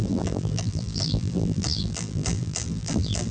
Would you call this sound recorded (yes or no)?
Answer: no